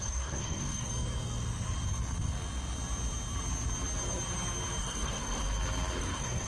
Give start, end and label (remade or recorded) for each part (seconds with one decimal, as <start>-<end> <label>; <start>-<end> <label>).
0.0-0.9 remade; 0.9-4.8 recorded; 4.8-5.4 remade; 5.4-6.0 recorded; 6.0-6.5 remade